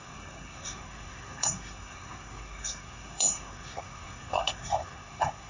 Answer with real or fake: fake